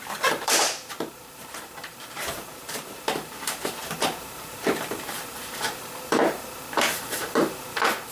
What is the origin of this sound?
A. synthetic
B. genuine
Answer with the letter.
A